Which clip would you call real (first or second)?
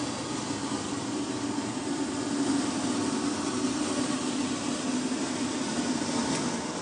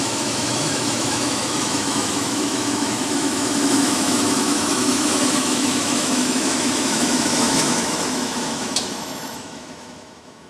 first